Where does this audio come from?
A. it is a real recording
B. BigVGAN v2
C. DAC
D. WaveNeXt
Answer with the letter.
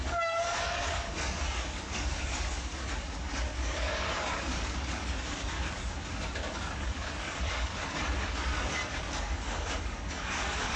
C